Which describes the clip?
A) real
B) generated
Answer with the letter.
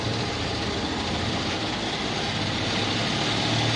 A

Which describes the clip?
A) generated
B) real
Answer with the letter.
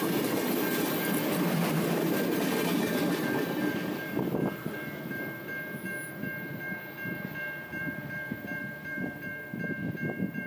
A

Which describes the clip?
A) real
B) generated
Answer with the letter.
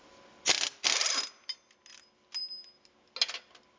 A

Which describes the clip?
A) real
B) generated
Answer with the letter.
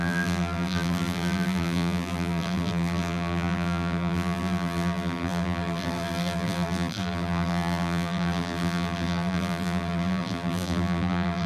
B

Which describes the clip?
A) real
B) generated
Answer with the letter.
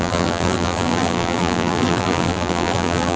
B